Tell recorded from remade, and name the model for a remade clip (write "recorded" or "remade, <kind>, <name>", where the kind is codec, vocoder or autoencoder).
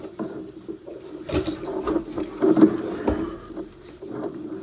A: recorded